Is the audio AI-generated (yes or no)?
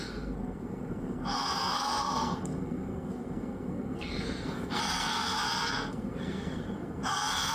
yes